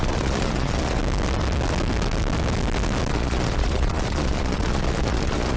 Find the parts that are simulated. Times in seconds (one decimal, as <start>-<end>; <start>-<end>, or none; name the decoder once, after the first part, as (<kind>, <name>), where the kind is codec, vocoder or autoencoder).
0.0-1.0 (vocoder, Vocos); 3.1-5.6

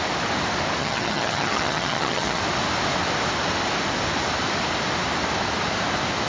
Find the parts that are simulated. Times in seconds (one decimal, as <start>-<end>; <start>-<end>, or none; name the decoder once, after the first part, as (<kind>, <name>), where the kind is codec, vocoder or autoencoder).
0.8-2.4 (vocoder, HiFi-GAN)

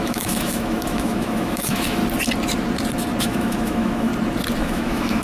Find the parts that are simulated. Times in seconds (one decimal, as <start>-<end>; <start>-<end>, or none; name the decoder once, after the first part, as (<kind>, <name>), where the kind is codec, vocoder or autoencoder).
0.0-2.0 (autoencoder, DAC-VAE); 3.2-4.1; 4.6-5.2

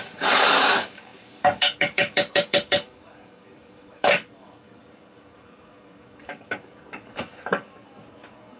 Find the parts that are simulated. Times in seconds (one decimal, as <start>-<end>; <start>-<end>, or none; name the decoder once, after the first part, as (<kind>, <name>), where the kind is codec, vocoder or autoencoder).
0.0-8.6 (codec, DAC)

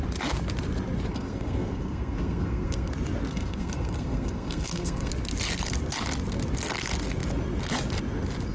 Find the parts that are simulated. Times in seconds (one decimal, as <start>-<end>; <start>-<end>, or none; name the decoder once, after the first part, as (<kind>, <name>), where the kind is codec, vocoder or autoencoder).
1.1-2.9 (codec, SNAC); 3.3-5.1

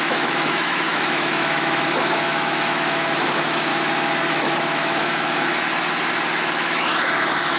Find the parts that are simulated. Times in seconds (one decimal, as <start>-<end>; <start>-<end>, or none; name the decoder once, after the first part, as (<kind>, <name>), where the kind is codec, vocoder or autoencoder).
0.0-3.7 (autoencoder, DAC-VAE); 4.3-5.5; 6.3-7.6

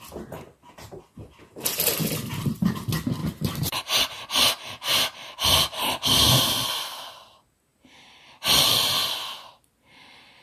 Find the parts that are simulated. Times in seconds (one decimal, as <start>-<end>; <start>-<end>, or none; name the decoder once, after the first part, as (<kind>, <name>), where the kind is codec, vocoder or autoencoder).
3.2-6.4 (vocoder, BigVGAN v2)

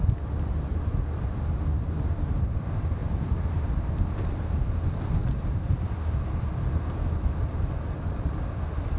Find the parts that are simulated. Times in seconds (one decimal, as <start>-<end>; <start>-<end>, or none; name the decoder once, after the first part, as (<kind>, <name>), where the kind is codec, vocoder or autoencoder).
3.0-3.8 (vocoder, BigVGAN v2)